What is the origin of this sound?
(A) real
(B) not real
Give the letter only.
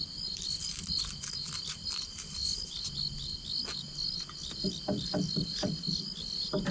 A